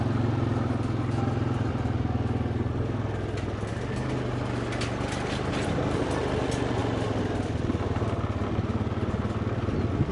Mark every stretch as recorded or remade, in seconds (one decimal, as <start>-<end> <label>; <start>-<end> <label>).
0.0-10.1 recorded